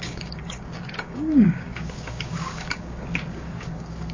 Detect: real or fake fake